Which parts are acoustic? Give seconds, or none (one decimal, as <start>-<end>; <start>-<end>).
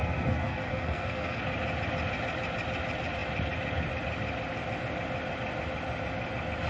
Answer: 1.4-6.7